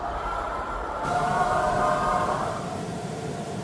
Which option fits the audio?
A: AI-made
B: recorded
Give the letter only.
A